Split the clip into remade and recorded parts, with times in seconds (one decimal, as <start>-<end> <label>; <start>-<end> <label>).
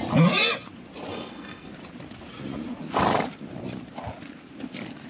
0.0-1.1 recorded; 1.1-1.7 remade; 1.7-5.1 recorded